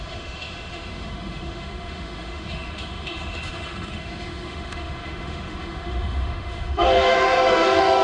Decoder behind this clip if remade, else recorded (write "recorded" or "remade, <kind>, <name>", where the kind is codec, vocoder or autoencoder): remade, autoencoder, DAC-VAE